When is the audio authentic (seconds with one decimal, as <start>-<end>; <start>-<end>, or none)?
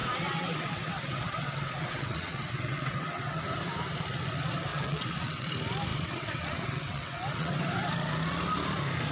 3.4-4.7; 5.5-5.9; 7.6-9.1